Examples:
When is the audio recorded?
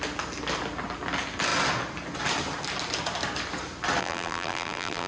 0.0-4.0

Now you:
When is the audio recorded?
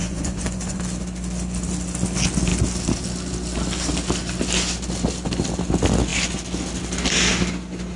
0.8-8.0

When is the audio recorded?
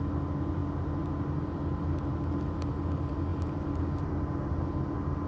0.0-5.3